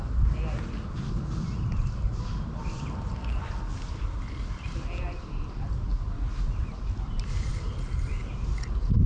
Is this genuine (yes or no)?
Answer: yes